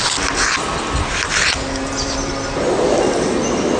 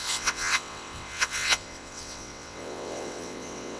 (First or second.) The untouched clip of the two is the first